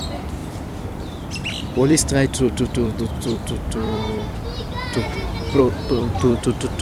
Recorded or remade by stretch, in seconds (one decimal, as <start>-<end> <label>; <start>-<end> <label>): 0.0-4.9 remade; 4.9-5.6 recorded; 5.6-6.8 remade